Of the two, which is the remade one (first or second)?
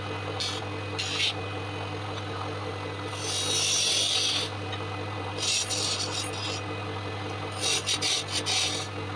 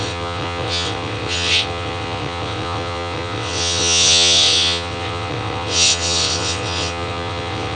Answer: second